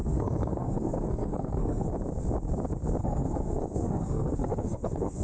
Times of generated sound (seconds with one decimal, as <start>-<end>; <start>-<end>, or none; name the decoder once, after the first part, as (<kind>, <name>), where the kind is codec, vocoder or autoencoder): 0.0-1.9 (codec, SNAC); 3.0-5.2